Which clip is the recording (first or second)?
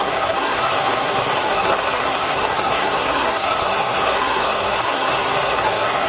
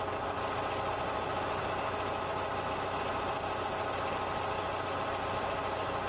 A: second